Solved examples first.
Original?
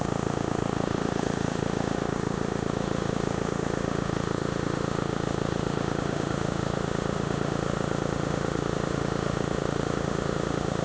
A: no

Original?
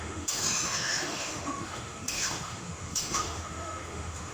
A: no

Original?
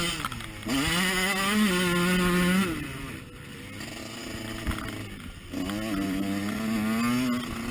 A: yes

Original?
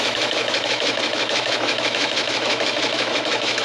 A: no